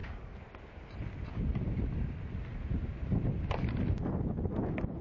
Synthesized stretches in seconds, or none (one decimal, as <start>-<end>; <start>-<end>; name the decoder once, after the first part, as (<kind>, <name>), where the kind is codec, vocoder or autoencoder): none